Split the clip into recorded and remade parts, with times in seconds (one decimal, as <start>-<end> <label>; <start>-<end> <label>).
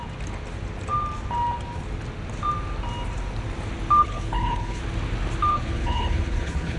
0.0-4.0 recorded; 4.0-4.8 remade; 4.8-5.5 recorded; 5.5-6.8 remade